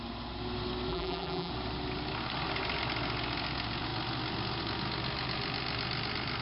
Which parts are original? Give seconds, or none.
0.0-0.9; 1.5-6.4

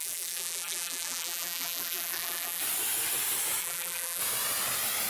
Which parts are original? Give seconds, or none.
2.6-3.6; 4.2-5.1

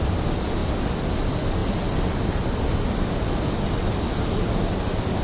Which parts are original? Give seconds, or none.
0.0-5.2

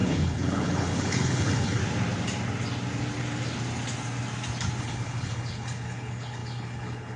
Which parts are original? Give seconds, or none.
1.8-4.8

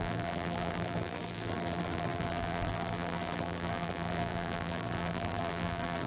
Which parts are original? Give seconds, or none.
none

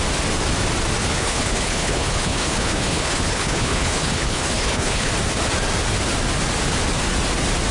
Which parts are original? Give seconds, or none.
0.0-1.0; 5.1-7.7